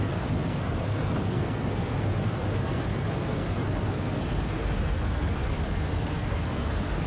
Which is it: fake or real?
fake